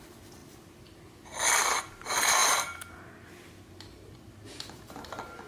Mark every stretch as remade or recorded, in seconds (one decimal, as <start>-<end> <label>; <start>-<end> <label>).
0.0-5.5 recorded